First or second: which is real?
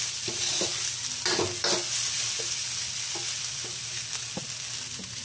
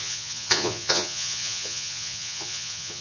first